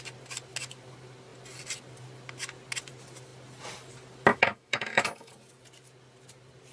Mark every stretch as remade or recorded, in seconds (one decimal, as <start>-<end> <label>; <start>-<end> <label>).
0.0-4.3 recorded; 4.3-5.3 remade; 5.3-6.7 recorded